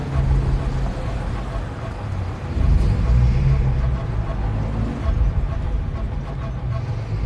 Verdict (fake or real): real